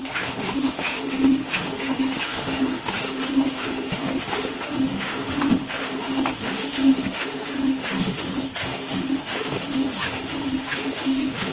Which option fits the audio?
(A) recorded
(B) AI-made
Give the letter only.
B